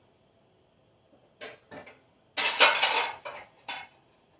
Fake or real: real